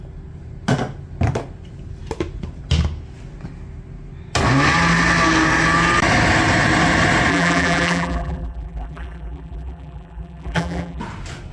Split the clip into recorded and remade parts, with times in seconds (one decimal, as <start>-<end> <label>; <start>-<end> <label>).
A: 0.0-7.3 recorded; 7.3-11.0 remade; 11.0-11.5 recorded